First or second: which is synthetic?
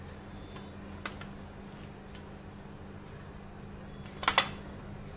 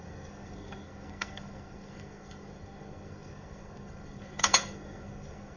second